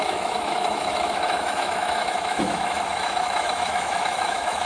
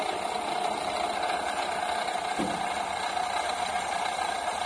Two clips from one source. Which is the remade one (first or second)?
first